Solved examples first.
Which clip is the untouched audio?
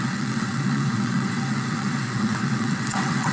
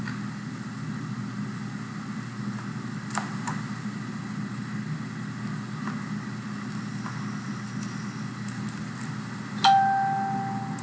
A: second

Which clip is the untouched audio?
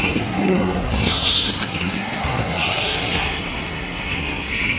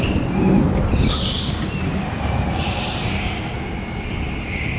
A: second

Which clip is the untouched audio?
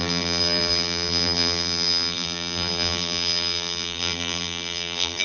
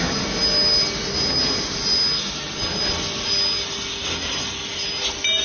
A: second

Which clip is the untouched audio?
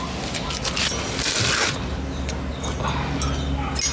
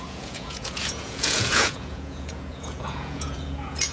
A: first